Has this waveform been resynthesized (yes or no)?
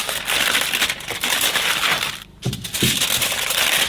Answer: no